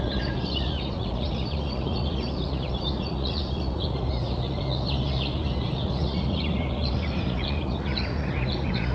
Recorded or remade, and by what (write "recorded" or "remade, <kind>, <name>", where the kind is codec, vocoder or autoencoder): remade, vocoder, Vocos